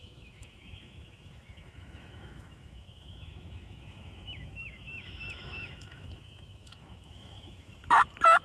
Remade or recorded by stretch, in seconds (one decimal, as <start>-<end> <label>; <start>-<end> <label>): 0.0-7.7 remade; 7.7-8.4 recorded